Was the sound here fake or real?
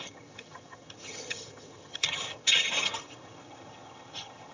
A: fake